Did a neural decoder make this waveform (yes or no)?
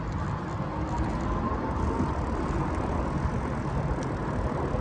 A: no